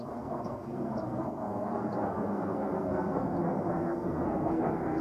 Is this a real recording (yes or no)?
no